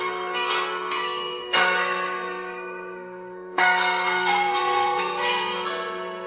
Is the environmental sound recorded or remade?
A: remade